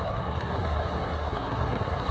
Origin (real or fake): fake